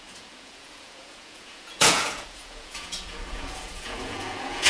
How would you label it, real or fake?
fake